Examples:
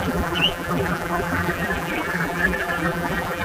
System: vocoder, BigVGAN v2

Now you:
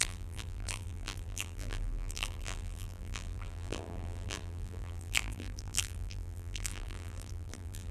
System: vocoder, BigVGAN v2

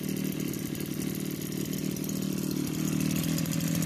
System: none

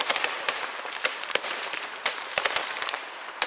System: vocoder, BigVGAN v2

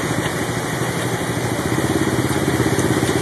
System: none